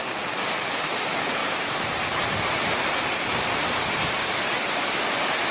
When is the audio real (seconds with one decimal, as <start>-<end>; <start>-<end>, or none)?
0.0-1.4; 2.0-5.5

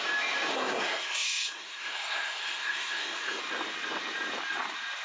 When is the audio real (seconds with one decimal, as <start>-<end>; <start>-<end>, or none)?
0.0-0.5; 3.4-5.0

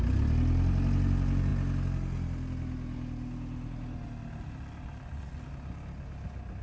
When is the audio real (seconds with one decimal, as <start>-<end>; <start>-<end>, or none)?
0.0-6.6

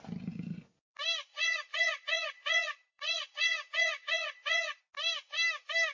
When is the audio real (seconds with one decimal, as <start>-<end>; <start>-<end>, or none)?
0.0-1.3; 4.8-5.9

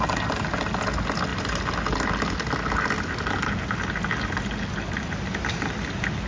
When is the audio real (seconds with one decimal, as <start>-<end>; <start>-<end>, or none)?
0.0-6.3

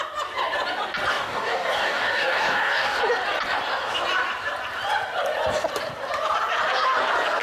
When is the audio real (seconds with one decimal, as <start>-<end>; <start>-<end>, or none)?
0.0-1.1; 3.0-7.4

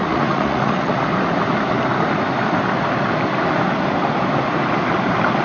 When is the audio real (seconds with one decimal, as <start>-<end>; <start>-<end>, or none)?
1.0-5.4

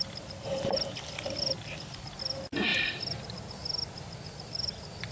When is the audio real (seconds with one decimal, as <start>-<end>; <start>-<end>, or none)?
0.0-2.7; 3.2-3.8